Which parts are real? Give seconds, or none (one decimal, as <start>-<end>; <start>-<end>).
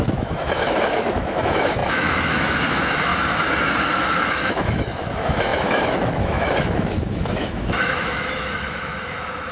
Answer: 3.1-4.0